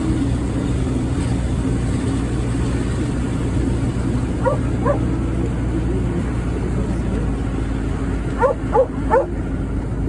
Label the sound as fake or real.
real